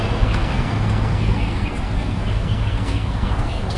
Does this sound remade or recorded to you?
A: remade